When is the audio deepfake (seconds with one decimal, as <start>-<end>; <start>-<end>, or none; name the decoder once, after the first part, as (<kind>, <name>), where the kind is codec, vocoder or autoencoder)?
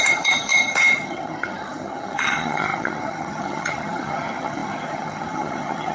0.0-5.9 (vocoder, HiFi-GAN)